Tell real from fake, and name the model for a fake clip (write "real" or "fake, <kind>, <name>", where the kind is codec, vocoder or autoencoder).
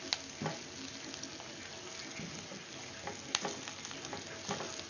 real